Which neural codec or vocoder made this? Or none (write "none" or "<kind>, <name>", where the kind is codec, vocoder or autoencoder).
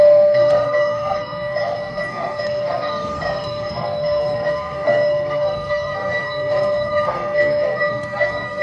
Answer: codec, SNAC